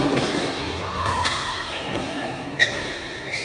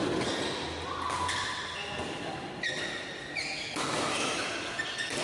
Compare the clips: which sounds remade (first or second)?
first